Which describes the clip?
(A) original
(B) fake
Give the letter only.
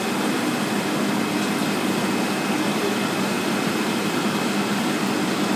B